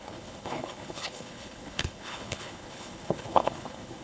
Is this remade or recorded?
remade